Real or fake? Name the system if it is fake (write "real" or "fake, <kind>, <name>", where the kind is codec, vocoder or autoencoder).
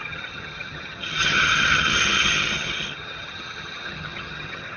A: fake, vocoder, HiFi-GAN